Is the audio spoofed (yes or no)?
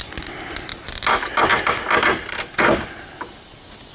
no